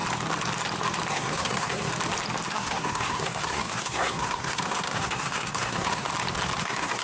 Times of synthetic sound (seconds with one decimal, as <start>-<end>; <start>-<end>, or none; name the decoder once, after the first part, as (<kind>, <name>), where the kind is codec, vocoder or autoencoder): 1.1-1.9 (codec, SNAC); 2.5-6.1; 6.6-7.0